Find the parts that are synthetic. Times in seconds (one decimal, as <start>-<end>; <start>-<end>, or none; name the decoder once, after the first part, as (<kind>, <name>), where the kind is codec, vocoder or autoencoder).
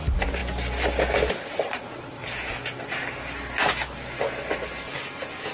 none